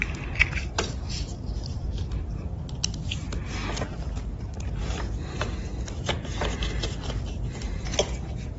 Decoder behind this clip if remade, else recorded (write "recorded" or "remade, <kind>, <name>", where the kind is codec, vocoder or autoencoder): recorded